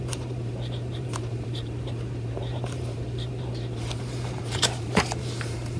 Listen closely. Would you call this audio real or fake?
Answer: fake